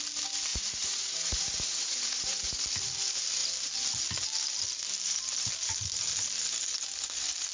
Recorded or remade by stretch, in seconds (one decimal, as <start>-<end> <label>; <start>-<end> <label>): 0.0-0.5 recorded; 0.5-2.6 remade; 2.6-7.5 recorded